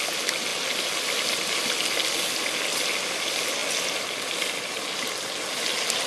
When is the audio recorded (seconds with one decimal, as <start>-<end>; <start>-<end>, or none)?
0.0-6.1